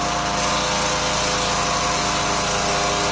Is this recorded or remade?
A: recorded